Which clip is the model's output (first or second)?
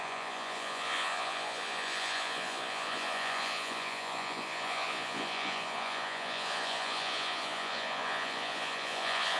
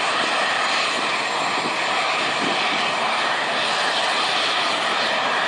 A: first